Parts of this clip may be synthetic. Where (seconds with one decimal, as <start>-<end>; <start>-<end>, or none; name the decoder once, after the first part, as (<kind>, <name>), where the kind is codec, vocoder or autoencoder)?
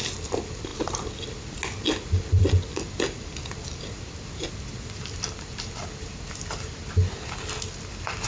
none